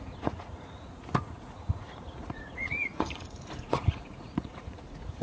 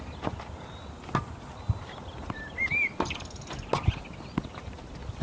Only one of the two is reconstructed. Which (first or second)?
first